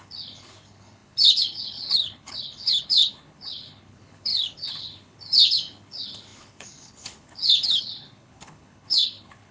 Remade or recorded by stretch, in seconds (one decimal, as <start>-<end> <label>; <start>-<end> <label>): 0.0-9.5 remade